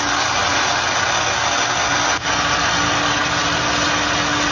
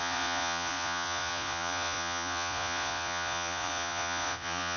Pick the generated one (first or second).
second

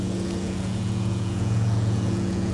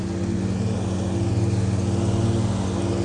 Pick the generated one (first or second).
first